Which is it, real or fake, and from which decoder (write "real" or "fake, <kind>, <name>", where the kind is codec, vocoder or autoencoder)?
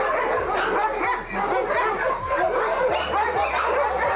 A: real